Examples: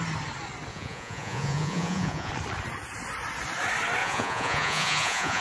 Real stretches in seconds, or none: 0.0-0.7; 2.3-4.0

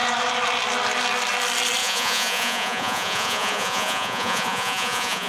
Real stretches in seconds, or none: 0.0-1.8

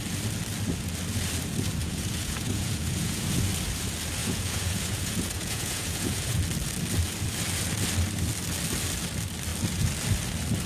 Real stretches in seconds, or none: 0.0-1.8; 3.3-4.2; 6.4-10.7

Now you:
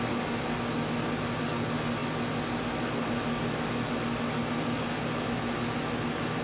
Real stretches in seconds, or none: 0.0-6.4

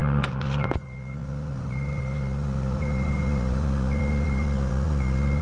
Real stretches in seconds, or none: none

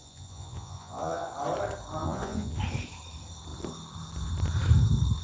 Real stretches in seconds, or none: 1.3-2.0; 2.6-5.2

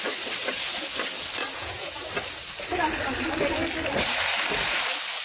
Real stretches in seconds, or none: 0.0-1.4; 2.1-5.2